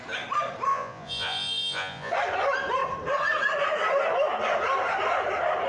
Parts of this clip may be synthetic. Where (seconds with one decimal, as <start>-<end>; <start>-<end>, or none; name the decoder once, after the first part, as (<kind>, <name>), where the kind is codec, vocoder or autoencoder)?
0.7-2.1 (vocoder, Vocos)

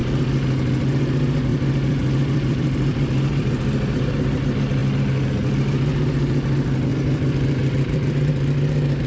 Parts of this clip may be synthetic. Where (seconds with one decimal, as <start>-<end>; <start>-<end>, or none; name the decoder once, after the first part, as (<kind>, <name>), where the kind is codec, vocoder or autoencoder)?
1.5-4.1 (vocoder, BigVGAN v2); 6.9-8.3

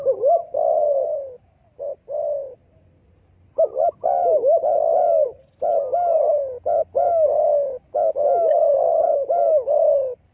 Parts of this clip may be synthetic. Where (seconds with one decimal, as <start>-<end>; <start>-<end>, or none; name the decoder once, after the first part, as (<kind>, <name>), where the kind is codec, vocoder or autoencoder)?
none

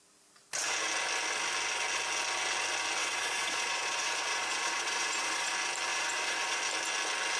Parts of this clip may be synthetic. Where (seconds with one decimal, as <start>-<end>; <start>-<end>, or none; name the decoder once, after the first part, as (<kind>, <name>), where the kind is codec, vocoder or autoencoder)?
3.0-5.5 (vocoder, Vocos); 5.9-6.6